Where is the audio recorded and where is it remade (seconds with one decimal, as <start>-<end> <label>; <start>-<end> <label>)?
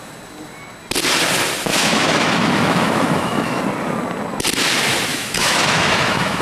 0.0-1.7 recorded; 1.7-3.6 remade; 3.6-5.1 recorded; 5.1-6.4 remade